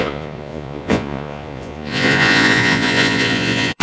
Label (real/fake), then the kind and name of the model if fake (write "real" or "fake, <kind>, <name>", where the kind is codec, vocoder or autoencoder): fake, vocoder, Vocos